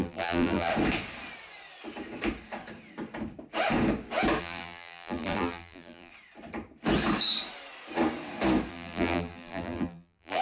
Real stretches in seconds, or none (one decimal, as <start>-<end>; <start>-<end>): 0.7-4.4; 6.1-8.7